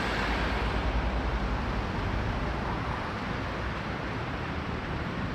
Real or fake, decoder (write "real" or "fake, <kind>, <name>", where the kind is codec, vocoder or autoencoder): fake, vocoder, BigVGAN v2